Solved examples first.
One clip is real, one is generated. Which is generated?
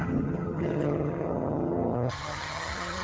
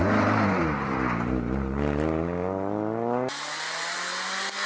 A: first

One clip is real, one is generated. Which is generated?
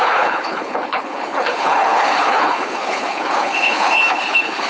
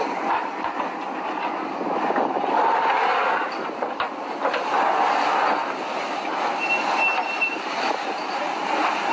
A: first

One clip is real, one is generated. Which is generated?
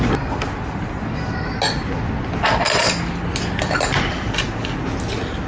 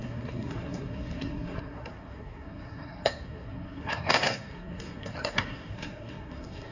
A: second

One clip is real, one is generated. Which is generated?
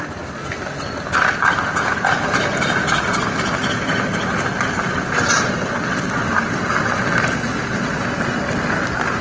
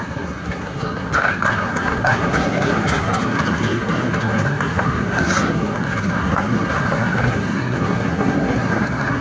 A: second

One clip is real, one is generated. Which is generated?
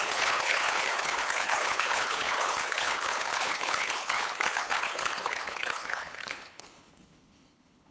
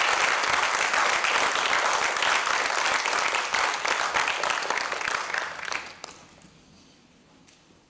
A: first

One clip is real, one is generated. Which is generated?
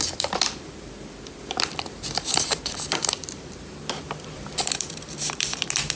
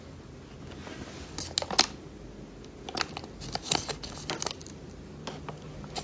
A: first